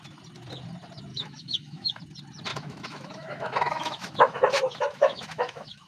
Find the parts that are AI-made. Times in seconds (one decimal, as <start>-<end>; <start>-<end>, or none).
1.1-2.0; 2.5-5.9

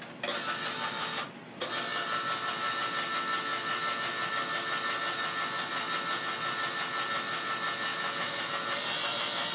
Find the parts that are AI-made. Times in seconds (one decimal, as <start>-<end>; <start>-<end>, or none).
7.9-8.5

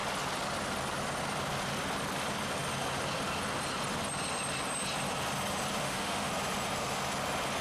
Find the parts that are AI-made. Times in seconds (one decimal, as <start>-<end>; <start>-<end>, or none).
5.8-6.3